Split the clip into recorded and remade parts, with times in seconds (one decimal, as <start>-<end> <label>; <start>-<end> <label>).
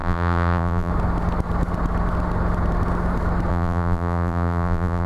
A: 0.0-0.9 remade; 0.9-3.5 recorded; 3.5-5.1 remade